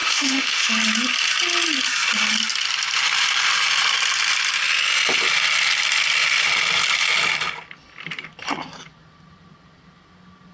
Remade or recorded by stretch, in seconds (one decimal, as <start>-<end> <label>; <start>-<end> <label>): 0.0-0.7 remade; 0.7-10.5 recorded